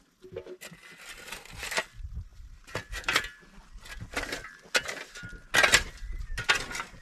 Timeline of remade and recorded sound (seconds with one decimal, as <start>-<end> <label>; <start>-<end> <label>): 0.0-7.0 recorded